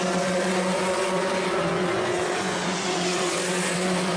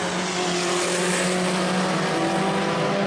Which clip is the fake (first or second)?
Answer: first